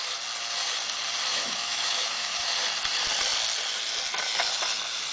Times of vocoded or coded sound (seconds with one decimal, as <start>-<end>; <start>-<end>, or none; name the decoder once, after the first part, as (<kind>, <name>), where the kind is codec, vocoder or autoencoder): 1.3-2.4 (autoencoder, DAC-VAE)